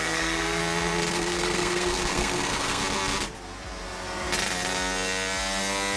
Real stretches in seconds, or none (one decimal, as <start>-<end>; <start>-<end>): 0.6-1.1; 2.8-6.0